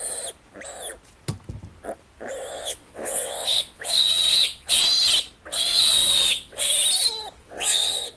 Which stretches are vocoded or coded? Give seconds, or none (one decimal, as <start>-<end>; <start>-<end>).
2.5-4.8; 5.5-6.7; 7.4-8.2